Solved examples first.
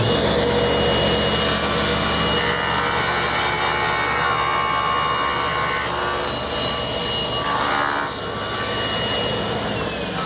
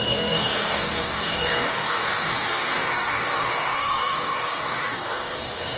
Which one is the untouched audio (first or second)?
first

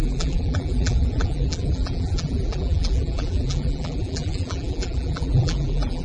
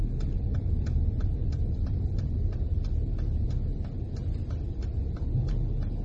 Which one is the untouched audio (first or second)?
second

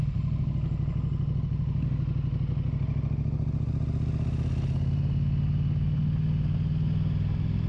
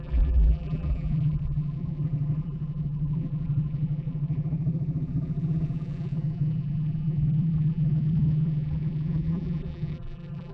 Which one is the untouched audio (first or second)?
first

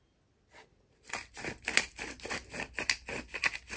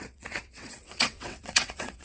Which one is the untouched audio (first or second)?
first